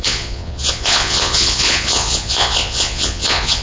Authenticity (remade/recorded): remade